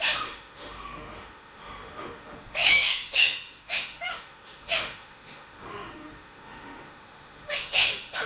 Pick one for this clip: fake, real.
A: fake